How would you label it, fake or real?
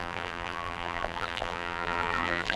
fake